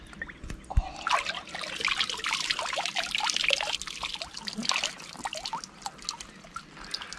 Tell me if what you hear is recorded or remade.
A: recorded